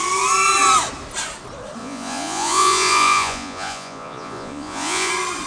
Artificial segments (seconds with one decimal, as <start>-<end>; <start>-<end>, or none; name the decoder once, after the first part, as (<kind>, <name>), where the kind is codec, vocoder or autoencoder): 1.8-5.1 (vocoder, Vocos)